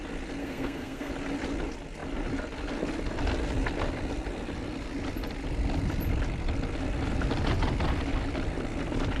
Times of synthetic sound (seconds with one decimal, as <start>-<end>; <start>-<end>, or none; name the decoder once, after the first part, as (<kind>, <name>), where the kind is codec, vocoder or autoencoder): 0.4-1.1 (codec, SNAC)